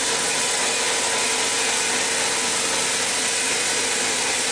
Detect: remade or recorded recorded